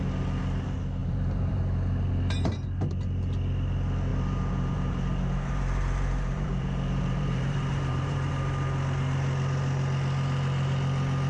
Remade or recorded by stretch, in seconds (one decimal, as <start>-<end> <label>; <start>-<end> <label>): 0.0-1.0 recorded; 1.0-1.6 remade; 1.6-4.1 recorded; 4.1-8.3 remade; 8.3-11.3 recorded